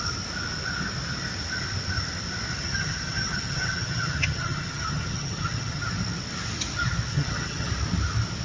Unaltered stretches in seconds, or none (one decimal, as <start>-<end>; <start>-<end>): 0.0-2.5; 5.8-7.1; 7.7-8.4